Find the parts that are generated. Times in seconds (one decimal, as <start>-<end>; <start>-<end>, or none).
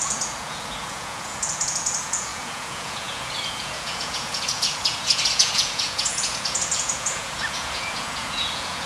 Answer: 0.0-8.9